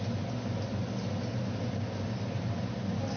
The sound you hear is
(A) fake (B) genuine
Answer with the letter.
B